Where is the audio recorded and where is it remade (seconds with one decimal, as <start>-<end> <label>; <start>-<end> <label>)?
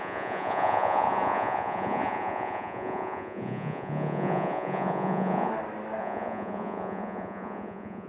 0.0-5.5 remade; 5.5-6.0 recorded; 6.0-8.1 remade